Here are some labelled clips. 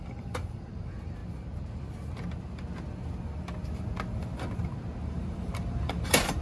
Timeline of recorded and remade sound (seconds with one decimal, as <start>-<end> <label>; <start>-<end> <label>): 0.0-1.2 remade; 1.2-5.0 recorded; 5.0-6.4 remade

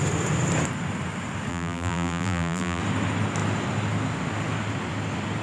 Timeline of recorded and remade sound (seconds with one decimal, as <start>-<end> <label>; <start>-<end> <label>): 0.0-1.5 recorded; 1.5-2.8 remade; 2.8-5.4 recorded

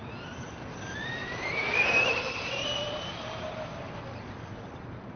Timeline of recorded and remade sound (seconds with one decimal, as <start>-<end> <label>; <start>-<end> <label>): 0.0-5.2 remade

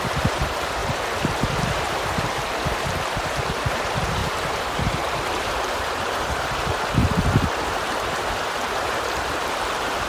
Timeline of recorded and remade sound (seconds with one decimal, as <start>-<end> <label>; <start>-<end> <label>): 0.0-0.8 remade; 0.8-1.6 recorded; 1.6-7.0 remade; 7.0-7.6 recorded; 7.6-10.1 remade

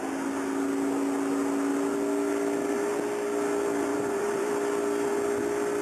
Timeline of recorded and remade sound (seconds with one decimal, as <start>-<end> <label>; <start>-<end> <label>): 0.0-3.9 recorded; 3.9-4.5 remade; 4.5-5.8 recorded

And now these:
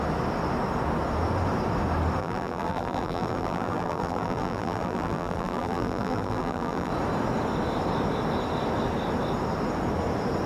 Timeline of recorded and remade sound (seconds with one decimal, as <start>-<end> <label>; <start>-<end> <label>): 0.0-2.2 recorded; 2.2-6.9 remade; 6.9-10.5 recorded

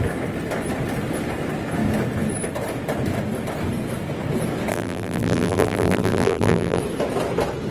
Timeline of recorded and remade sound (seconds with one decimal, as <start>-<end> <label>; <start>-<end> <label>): 0.0-4.7 recorded; 4.7-6.8 remade; 6.8-7.7 recorded